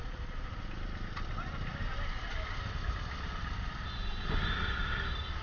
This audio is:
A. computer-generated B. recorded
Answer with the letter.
A